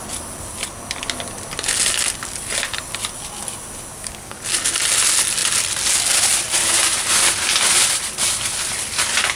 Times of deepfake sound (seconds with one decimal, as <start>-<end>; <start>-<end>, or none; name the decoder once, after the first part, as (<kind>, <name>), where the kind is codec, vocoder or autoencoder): 3.9-4.4 (codec, DAC)